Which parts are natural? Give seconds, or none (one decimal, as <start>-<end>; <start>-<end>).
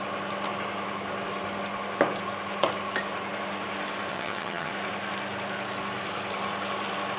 0.0-4.1; 4.7-7.2